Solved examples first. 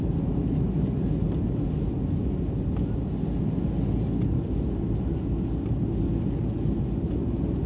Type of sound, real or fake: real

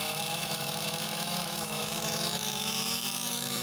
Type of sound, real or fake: fake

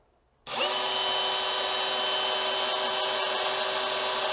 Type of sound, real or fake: real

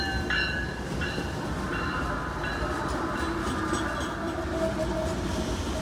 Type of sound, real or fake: real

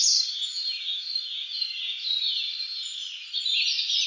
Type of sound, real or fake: real